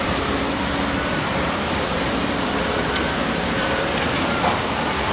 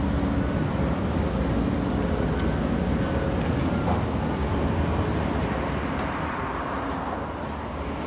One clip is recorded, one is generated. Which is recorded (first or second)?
second